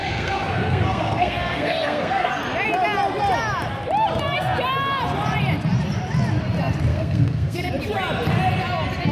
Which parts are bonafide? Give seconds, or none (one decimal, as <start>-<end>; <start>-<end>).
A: 2.4-6.9; 7.7-9.1